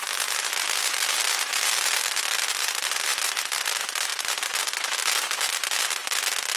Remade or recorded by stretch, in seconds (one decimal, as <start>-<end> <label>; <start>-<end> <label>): 0.0-6.6 recorded